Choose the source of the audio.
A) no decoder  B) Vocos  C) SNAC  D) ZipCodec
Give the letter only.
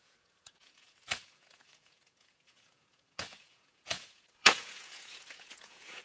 B